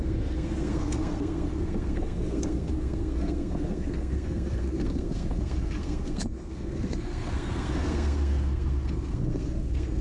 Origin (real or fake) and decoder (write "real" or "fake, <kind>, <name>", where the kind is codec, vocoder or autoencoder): fake, codec, SNAC